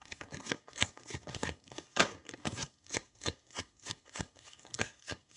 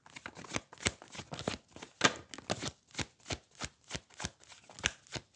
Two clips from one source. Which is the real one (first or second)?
second